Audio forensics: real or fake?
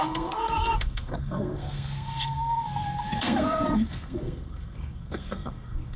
fake